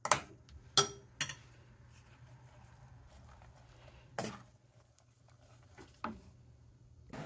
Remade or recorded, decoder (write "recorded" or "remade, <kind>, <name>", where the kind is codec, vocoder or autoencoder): recorded